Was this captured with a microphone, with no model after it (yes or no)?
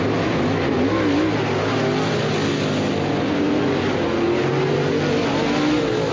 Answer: yes